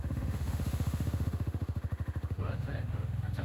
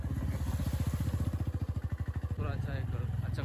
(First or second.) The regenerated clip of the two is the first